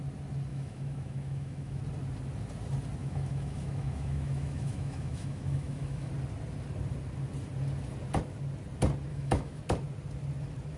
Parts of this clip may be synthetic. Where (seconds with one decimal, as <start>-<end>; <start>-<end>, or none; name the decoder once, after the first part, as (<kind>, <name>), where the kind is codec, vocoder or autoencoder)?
0.5-1.8 (autoencoder, DAC-VAE); 3.0-6.1; 9.1-9.6